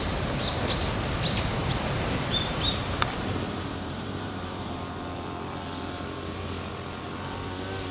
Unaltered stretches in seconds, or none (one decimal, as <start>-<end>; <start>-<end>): 0.7-1.6; 4.8-7.9